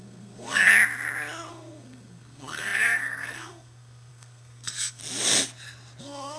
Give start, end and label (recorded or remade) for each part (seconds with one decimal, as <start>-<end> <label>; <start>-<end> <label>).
0.0-0.7 remade; 0.7-1.5 recorded; 1.5-5.0 remade; 5.0-6.0 recorded; 6.0-6.4 remade